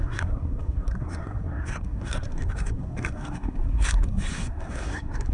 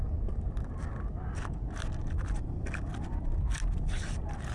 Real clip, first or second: second